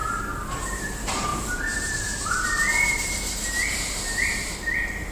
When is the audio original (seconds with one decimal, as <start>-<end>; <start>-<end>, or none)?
0.0-0.6